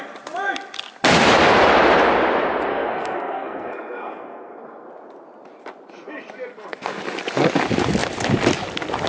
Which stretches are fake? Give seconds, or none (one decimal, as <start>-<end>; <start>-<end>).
2.7-4.9; 6.5-7.0